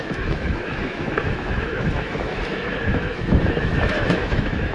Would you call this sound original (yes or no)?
no